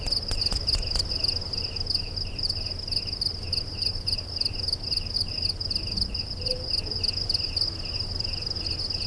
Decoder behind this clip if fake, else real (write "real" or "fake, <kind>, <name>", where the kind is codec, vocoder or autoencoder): real